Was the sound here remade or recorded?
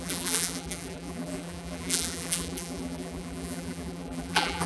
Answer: remade